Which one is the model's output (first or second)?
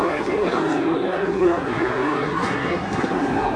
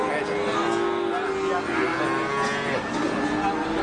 first